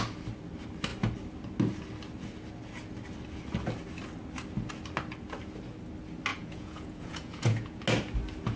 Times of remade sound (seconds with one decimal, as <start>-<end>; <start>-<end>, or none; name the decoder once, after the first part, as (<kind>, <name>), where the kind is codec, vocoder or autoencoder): 6.3-7.8 (vocoder, Vocos)